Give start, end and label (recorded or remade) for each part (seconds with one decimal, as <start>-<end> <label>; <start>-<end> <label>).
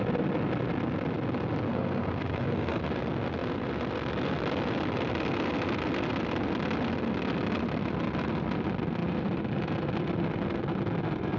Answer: 0.0-1.7 recorded; 1.7-2.8 remade; 2.8-11.4 recorded